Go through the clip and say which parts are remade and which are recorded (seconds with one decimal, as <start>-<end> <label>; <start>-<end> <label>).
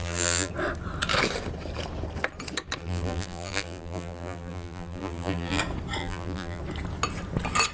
0.0-0.5 remade; 0.5-2.8 recorded; 2.8-5.6 remade; 5.6-6.0 recorded; 6.0-6.6 remade; 6.6-7.7 recorded